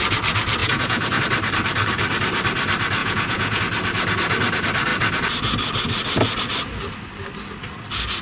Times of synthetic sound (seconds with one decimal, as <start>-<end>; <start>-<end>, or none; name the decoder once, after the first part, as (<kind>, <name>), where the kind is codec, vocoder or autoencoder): 0.6-1.2 (vocoder, Vocos); 3.0-3.6